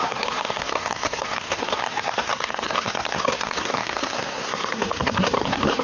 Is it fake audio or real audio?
fake